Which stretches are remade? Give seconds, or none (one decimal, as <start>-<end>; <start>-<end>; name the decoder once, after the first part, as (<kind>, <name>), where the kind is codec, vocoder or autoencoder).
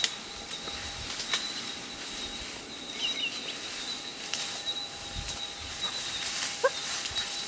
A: none